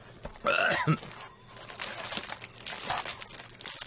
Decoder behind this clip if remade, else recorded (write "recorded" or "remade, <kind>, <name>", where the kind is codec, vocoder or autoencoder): recorded